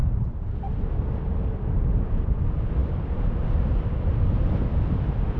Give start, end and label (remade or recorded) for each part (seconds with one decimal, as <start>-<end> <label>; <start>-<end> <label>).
0.0-1.0 remade; 1.0-5.4 recorded